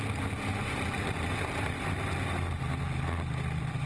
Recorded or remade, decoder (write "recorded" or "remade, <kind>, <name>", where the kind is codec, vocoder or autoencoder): recorded